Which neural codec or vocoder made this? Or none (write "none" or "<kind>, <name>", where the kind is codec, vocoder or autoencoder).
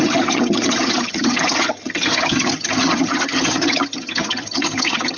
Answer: vocoder, HiFi-GAN